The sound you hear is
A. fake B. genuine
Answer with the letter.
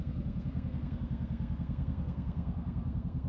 A